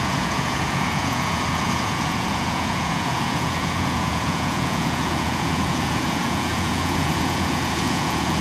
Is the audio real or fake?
fake